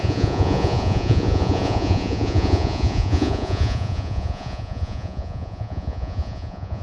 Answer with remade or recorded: remade